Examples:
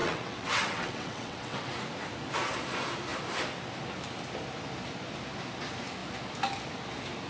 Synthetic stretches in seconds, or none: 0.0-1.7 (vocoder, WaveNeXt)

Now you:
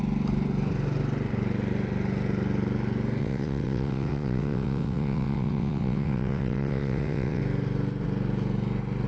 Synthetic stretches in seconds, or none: 3.2-7.4 (vocoder, WaveNeXt)